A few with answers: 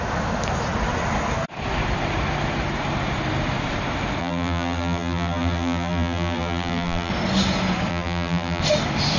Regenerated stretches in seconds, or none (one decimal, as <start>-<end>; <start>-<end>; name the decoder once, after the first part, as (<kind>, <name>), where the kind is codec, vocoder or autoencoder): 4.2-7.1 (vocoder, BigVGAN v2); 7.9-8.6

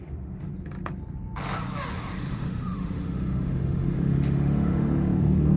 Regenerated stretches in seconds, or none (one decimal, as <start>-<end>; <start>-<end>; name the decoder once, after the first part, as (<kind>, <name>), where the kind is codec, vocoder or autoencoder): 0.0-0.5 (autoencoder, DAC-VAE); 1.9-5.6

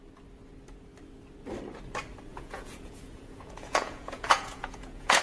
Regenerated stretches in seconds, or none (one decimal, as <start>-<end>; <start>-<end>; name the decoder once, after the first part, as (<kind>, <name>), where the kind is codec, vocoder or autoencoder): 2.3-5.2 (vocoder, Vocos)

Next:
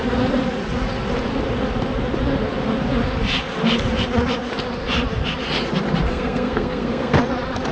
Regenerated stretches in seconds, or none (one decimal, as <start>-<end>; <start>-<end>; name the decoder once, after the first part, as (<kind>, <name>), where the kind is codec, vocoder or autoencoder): 6.1-7.2 (codec, SNAC)